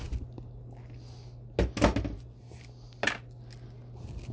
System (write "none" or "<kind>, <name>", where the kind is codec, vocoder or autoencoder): none